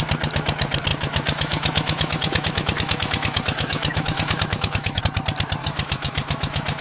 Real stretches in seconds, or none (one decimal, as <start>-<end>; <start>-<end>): 0.0-0.9; 5.0-5.6